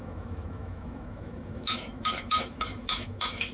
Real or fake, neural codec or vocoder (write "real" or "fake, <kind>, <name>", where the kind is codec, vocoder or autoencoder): fake, autoencoder, DAC-VAE